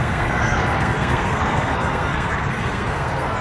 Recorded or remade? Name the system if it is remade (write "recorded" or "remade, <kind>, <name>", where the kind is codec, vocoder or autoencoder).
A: remade, codec, SNAC